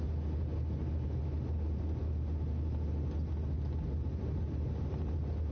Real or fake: real